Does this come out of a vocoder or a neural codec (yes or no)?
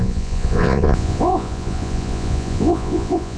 yes